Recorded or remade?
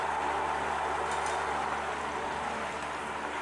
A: recorded